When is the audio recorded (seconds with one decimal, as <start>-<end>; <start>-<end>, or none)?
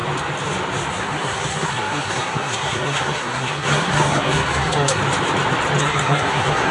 0.0-0.9; 5.0-5.8